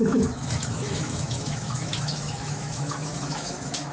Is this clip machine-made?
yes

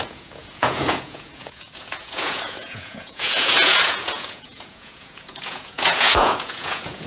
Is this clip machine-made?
yes